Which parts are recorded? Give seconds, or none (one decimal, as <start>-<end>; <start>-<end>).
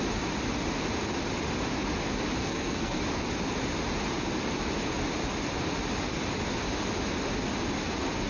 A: 0.0-2.4; 3.0-8.3